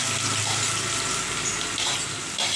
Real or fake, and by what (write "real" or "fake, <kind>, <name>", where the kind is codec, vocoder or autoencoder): real